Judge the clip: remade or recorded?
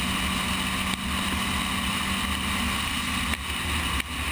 recorded